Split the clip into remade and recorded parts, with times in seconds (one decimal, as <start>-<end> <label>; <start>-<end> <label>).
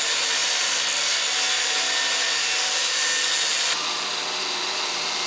0.0-5.3 recorded